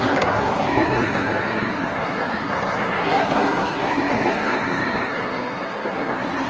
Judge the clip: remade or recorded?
remade